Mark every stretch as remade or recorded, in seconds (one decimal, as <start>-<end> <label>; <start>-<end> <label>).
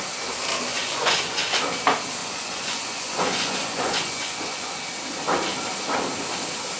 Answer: 0.0-0.7 recorded; 0.7-1.6 remade; 1.6-2.2 recorded; 2.2-4.8 remade; 4.8-6.8 recorded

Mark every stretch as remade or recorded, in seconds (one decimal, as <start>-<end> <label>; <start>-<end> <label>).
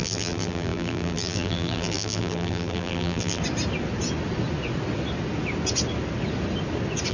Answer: 0.0-3.4 remade; 3.4-7.1 recorded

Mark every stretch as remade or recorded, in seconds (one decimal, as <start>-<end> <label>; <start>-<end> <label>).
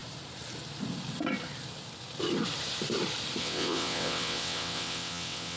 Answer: 0.0-3.4 recorded; 3.4-5.6 remade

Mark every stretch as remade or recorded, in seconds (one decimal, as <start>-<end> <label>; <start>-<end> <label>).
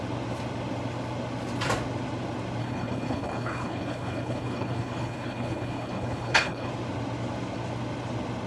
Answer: 0.0-2.6 recorded; 2.6-6.7 remade; 6.7-8.5 recorded